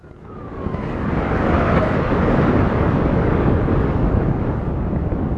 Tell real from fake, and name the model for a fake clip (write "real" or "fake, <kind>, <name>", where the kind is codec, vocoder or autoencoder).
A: fake, codec, DAC